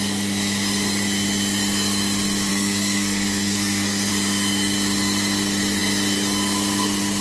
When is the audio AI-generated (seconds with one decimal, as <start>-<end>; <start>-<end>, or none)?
2.5-4.1